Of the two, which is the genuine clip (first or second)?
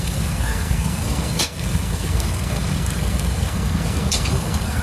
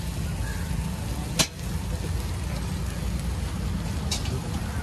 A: second